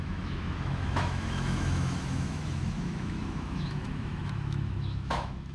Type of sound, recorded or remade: remade